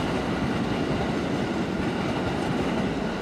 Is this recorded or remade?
recorded